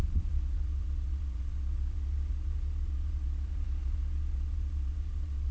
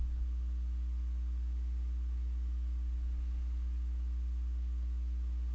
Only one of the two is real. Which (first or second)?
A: second